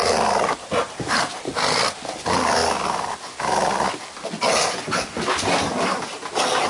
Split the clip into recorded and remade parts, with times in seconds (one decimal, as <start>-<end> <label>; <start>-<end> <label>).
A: 0.0-6.7 recorded

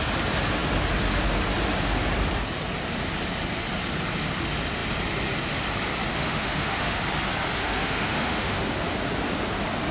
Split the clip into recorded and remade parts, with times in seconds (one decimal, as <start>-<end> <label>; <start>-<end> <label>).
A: 0.0-6.1 recorded; 6.1-7.0 remade; 7.0-7.6 recorded; 7.6-8.6 remade; 8.6-9.9 recorded

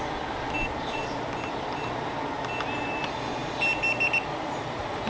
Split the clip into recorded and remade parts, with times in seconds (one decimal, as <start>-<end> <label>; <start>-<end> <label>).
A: 0.0-3.4 recorded; 3.4-5.1 remade

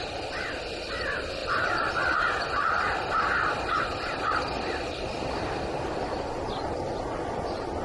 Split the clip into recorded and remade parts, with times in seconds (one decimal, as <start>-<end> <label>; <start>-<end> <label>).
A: 0.0-1.4 recorded; 1.4-1.9 remade; 1.9-7.8 recorded

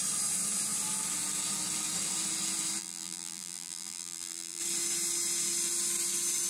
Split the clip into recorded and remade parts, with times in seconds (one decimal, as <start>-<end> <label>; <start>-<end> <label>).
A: 0.0-2.8 recorded; 2.8-4.6 remade; 4.6-6.5 recorded

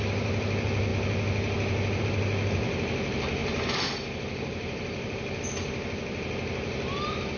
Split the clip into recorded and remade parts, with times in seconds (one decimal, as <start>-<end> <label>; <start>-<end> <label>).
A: 0.0-3.4 recorded; 3.4-5.4 remade; 5.4-7.4 recorded

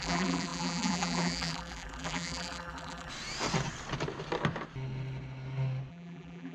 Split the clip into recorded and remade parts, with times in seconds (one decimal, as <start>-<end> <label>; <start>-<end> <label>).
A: 0.0-3.1 remade; 3.1-5.9 recorded; 5.9-6.5 remade